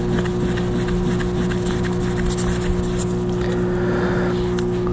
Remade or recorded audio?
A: recorded